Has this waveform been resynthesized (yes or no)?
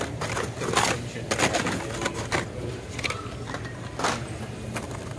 no